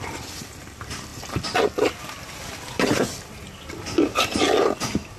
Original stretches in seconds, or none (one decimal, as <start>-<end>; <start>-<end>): 0.0-5.2